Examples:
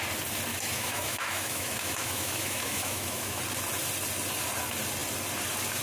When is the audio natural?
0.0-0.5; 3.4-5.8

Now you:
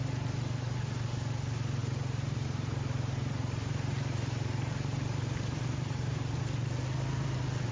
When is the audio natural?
0.0-1.8; 6.4-7.7